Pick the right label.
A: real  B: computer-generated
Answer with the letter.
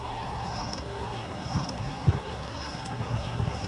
B